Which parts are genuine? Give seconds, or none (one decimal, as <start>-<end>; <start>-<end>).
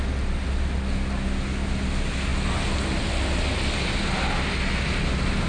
0.0-5.5